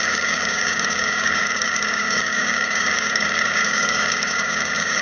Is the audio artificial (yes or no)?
yes